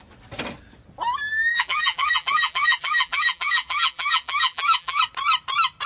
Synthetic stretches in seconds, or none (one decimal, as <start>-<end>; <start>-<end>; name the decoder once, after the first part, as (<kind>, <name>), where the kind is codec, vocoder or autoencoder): 1.5-5.0 (vocoder, BigVGAN v2)